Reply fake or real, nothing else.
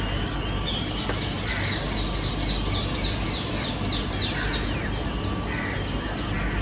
real